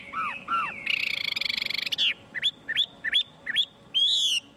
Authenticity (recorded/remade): recorded